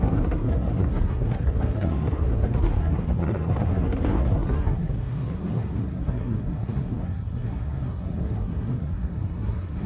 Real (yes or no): no